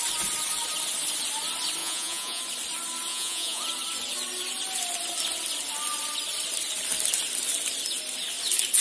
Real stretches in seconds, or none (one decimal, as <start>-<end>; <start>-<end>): 0.0-1.8; 2.4-3.1; 3.6-8.8